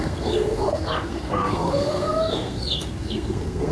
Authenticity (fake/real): fake